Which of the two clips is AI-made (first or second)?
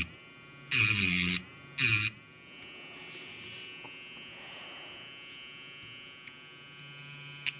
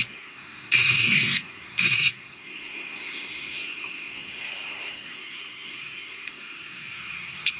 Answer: second